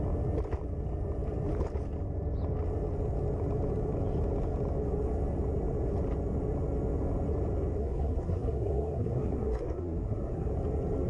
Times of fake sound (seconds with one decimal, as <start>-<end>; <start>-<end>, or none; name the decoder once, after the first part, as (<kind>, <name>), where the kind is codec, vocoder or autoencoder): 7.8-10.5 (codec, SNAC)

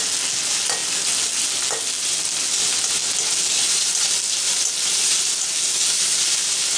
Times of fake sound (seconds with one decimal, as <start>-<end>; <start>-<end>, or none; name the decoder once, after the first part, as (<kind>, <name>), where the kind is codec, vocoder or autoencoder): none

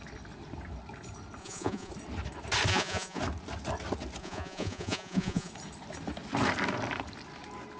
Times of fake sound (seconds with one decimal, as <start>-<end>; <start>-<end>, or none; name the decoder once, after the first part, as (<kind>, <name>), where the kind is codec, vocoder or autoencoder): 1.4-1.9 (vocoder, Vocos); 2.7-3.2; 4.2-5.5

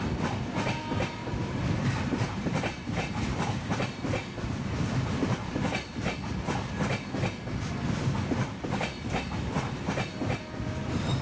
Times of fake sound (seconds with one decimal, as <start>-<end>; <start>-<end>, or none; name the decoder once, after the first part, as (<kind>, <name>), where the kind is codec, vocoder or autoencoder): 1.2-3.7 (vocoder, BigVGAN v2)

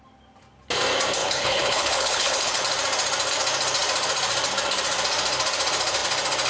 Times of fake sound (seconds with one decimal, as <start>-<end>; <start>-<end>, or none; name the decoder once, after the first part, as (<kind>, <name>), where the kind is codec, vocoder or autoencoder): 1.2-2.6 (codec, HILCodec)

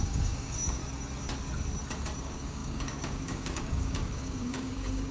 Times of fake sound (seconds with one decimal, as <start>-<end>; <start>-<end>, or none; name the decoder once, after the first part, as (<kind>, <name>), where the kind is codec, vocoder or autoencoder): 0.0-0.8 (codec, DAC); 2.2-5.1